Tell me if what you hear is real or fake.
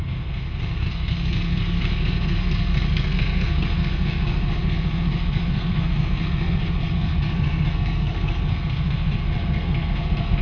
fake